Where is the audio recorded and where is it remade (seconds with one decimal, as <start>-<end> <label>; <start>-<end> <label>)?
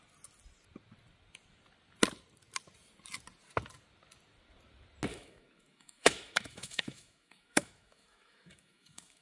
0.0-5.1 recorded; 5.1-9.2 remade